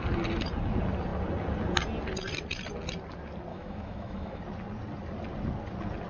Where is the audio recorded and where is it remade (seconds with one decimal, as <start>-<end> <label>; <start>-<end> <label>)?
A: 0.0-3.5 recorded; 3.5-4.4 remade; 4.4-6.1 recorded